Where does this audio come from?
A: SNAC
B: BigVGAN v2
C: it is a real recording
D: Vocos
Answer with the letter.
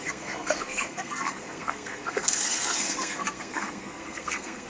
A